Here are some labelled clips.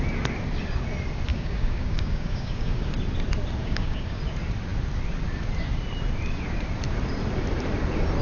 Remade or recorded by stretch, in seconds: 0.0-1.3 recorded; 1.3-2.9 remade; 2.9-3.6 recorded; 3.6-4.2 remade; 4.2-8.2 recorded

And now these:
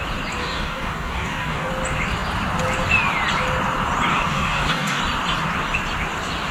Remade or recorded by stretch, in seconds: 0.0-0.4 recorded; 0.4-1.7 remade; 1.7-4.1 recorded; 4.1-5.0 remade; 5.0-6.5 recorded

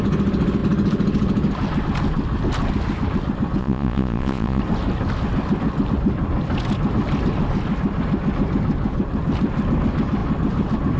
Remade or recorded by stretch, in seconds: 0.0-3.6 recorded; 3.6-4.6 remade; 4.6-11.0 recorded

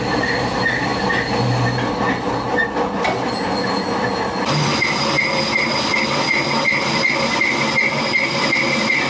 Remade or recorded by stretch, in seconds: 0.0-9.1 recorded

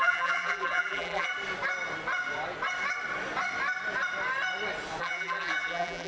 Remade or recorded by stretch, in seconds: 0.0-1.3 remade; 1.3-5.0 recorded; 5.0-6.1 remade

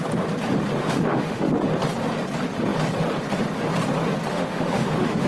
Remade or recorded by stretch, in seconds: 0.0-0.8 recorded; 0.8-1.5 remade; 1.5-4.3 recorded; 4.3-5.3 remade

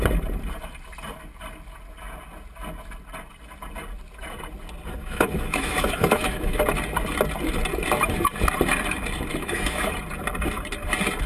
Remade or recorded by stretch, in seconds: 0.0-5.0 recorded; 5.0-6.6 remade; 6.6-9.3 recorded; 9.3-9.9 remade; 9.9-11.3 recorded